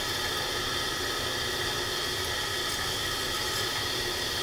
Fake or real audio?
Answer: real